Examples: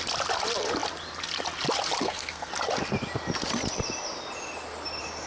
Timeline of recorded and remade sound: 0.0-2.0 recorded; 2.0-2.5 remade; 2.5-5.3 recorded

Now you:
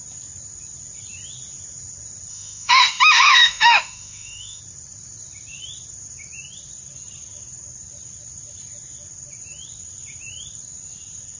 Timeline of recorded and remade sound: 0.0-2.3 recorded; 2.3-4.6 remade; 4.6-11.4 recorded

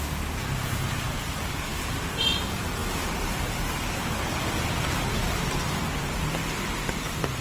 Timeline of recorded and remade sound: 0.0-6.4 remade; 6.4-7.0 recorded; 7.0-7.4 remade

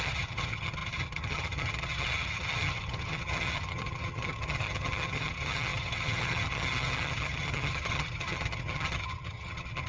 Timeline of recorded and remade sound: 0.0-9.9 remade

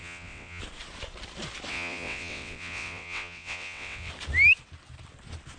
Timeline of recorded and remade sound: 0.0-0.6 remade; 0.6-1.7 recorded; 1.7-4.1 remade; 4.1-5.6 recorded

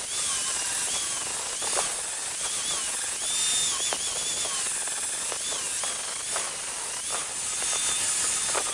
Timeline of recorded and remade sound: 0.0-8.7 recorded

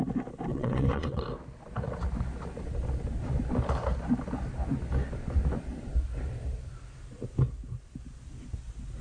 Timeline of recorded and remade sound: 0.0-0.5 recorded; 0.5-1.2 remade; 1.2-9.0 recorded

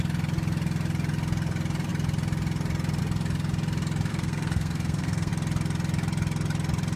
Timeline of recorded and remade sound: 0.0-4.1 recorded; 4.1-5.3 remade; 5.3-7.0 recorded